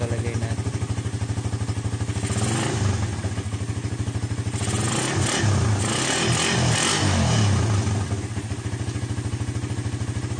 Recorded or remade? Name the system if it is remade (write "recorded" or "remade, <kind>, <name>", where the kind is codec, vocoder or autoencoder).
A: recorded